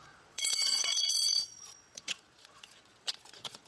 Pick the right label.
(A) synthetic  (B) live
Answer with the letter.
A